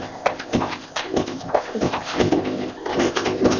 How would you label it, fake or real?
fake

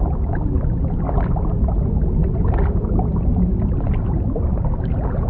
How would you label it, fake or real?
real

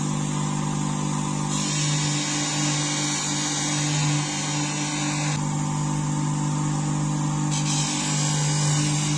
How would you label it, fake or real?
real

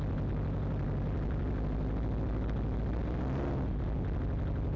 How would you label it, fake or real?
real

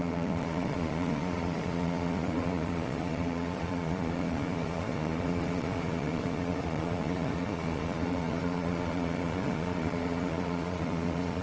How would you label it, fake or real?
fake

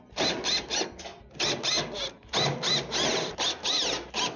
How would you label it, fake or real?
real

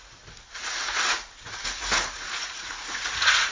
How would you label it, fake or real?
fake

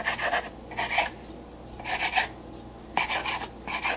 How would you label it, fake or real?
real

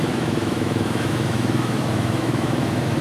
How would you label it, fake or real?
fake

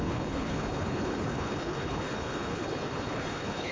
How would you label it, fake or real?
fake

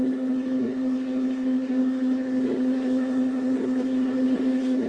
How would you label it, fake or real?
fake